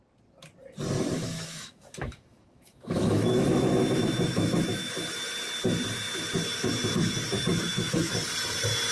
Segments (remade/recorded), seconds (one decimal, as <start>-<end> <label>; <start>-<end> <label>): 0.0-1.1 recorded; 1.1-4.9 remade; 4.9-7.5 recorded; 7.5-8.1 remade; 8.1-8.9 recorded